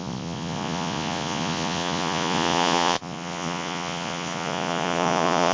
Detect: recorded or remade remade